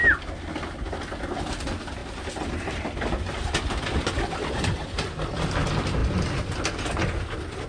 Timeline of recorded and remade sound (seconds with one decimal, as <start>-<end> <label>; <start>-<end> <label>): 0.0-2.0 recorded; 2.0-5.1 remade; 5.1-7.7 recorded